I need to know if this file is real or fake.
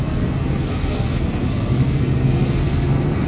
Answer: fake